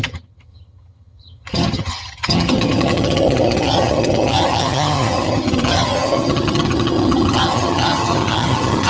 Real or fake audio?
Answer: fake